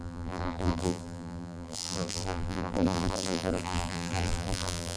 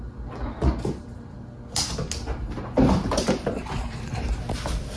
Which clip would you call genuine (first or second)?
second